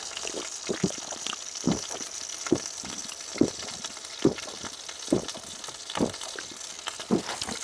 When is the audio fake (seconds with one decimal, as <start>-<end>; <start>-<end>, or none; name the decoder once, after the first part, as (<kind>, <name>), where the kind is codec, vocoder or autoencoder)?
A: none